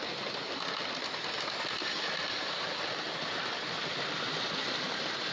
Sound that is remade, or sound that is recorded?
remade